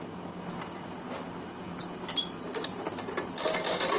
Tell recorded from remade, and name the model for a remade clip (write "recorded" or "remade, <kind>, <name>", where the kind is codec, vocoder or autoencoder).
recorded